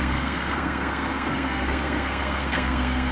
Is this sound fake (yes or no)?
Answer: yes